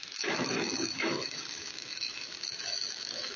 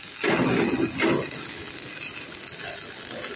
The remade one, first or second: first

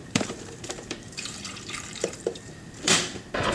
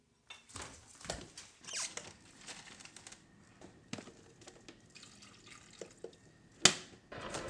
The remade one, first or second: first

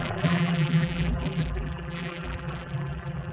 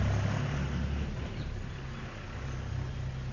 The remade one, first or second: first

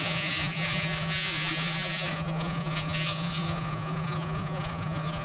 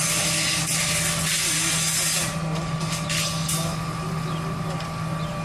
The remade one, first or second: first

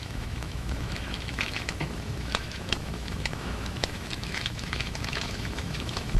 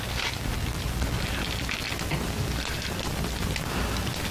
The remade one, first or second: first